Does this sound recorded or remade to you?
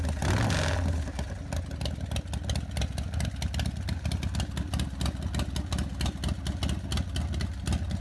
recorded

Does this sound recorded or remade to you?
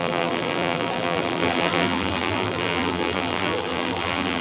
remade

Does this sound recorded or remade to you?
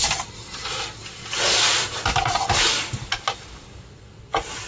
recorded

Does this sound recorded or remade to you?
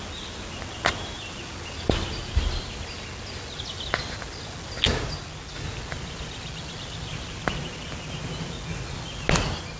recorded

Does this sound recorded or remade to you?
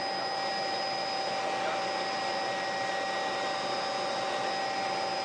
recorded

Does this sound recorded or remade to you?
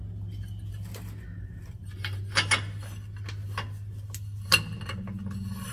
recorded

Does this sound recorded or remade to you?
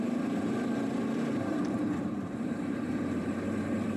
remade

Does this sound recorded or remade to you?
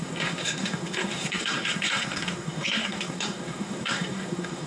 remade